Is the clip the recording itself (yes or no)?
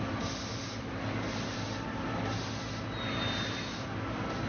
yes